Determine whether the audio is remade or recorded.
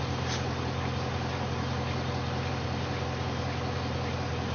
recorded